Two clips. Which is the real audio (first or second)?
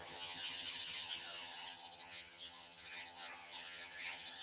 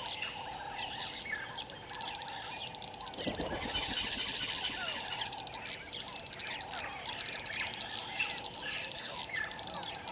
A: second